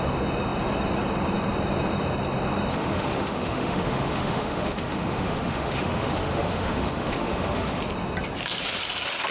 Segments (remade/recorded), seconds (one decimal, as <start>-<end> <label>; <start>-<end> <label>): 0.0-2.7 recorded; 2.7-7.8 remade; 7.8-9.3 recorded